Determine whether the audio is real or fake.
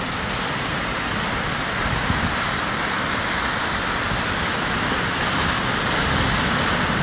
real